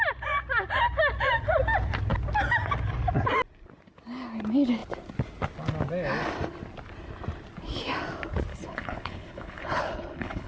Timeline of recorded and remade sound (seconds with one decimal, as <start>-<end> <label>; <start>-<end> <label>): 0.0-8.5 recorded; 8.5-10.5 remade